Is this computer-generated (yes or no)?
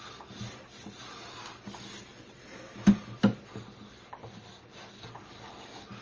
no